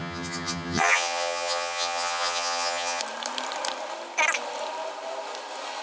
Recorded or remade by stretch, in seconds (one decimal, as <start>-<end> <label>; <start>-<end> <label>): 0.0-3.0 remade; 3.0-5.8 recorded

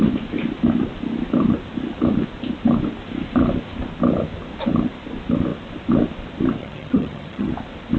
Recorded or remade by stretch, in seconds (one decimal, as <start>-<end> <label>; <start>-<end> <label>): 0.0-6.6 recorded; 6.6-7.5 remade; 7.5-8.0 recorded